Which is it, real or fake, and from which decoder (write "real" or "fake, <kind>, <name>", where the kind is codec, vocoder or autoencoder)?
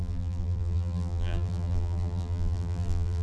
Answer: fake, vocoder, BigVGAN v2